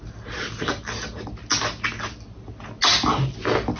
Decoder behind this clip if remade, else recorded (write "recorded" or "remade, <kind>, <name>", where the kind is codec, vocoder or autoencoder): recorded